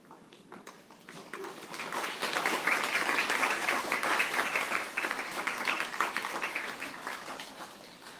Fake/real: fake